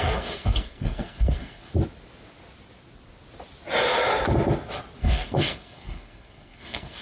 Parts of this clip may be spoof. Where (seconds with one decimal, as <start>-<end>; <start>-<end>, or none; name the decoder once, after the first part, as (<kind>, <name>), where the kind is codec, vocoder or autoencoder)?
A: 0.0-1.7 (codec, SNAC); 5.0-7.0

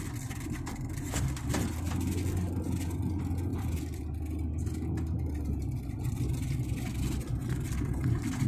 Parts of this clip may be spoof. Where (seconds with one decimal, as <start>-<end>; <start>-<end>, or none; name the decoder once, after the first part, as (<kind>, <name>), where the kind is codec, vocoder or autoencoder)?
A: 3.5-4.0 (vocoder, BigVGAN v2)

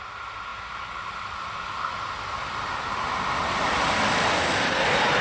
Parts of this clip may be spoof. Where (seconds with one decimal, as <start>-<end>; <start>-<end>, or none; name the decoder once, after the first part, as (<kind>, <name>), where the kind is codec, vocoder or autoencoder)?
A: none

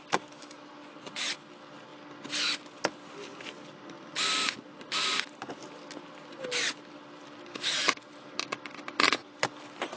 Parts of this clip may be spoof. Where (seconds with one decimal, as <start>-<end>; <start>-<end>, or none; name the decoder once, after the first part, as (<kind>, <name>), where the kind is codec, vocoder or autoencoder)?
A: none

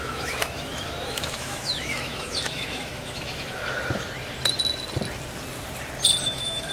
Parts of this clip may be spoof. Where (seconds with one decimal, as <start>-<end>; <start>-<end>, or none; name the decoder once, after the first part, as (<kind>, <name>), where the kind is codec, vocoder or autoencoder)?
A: 0.0-3.6 (autoencoder, DAC-VAE); 6.2-6.7

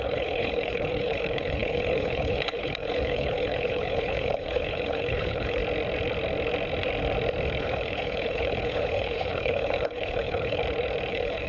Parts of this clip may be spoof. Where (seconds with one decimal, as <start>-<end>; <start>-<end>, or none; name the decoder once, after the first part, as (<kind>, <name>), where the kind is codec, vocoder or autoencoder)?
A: 0.0-5.6 (codec, HILCodec); 7.6-10.6; 11.1-11.5